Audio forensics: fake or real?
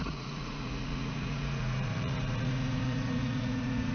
fake